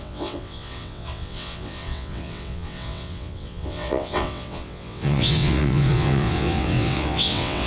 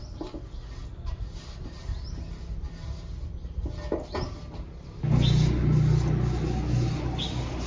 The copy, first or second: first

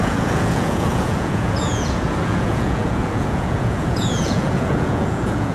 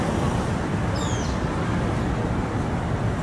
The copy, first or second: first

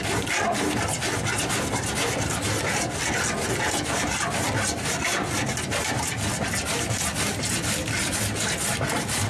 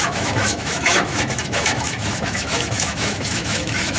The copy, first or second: second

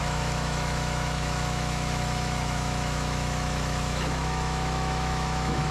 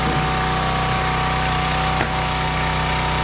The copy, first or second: first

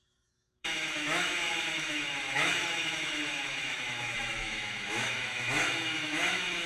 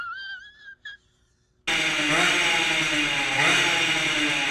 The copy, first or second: first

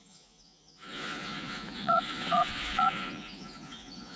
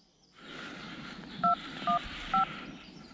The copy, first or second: first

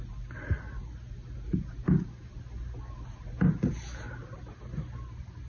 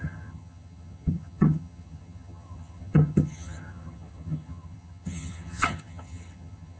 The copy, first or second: second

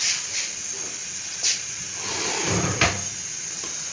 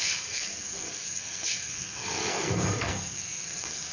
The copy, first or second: second